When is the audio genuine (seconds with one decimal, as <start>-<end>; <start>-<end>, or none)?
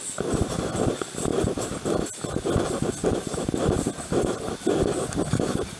0.0-5.8